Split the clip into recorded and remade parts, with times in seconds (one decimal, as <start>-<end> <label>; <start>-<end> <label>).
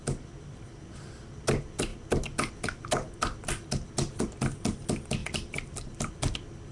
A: 0.0-5.2 recorded; 5.2-6.1 remade; 6.1-6.7 recorded